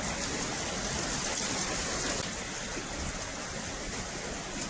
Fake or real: real